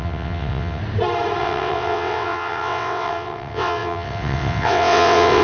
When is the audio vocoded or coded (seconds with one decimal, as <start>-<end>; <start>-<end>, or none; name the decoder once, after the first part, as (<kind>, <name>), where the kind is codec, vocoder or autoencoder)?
0.0-0.8 (vocoder, WaveNeXt); 1.4-5.4